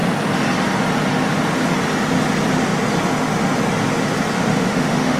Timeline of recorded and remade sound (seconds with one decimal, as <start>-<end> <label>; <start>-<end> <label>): 0.0-4.5 recorded; 4.5-5.2 remade